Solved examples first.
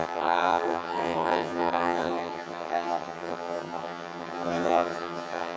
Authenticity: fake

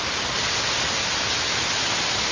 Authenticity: real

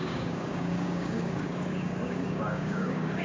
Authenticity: fake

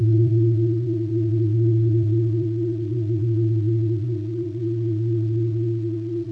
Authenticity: fake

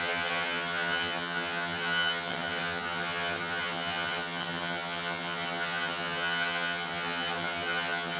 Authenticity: fake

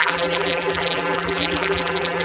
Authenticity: fake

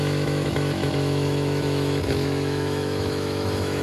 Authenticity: fake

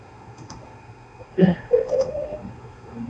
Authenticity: fake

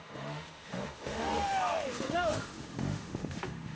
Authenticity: fake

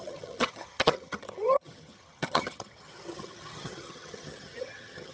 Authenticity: fake